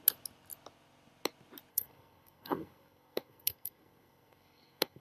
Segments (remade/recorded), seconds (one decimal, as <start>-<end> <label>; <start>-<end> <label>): 0.0-1.7 recorded; 1.7-5.0 remade